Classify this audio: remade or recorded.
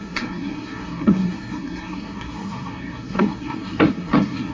remade